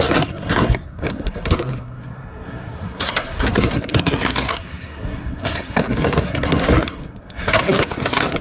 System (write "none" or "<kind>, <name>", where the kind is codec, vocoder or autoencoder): codec, SNAC